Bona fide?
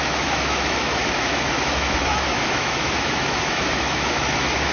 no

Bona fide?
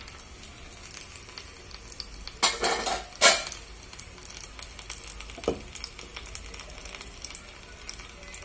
yes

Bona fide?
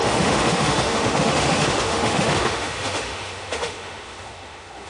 no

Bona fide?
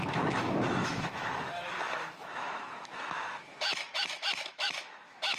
no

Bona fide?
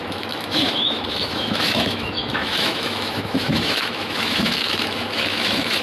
no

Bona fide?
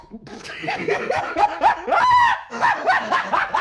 no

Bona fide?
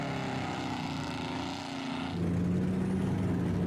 yes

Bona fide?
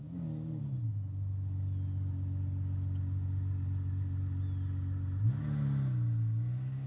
yes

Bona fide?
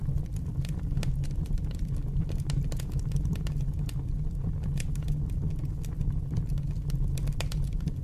yes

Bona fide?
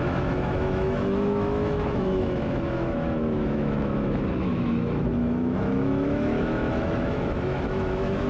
no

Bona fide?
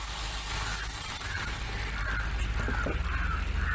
yes